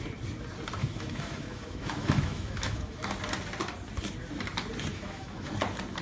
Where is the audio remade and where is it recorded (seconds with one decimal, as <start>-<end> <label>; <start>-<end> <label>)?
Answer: 0.0-0.8 recorded; 0.8-3.1 remade; 3.1-4.9 recorded; 4.9-5.5 remade; 5.5-6.0 recorded